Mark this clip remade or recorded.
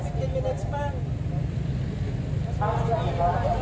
recorded